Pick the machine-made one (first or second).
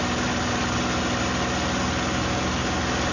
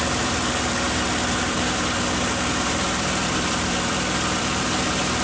second